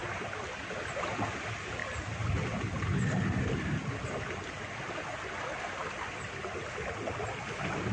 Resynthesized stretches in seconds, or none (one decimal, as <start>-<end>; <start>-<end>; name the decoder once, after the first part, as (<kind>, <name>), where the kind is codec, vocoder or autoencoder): none